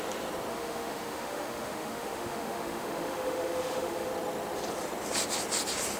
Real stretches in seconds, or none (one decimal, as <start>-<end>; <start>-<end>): 0.0-0.5; 4.1-6.0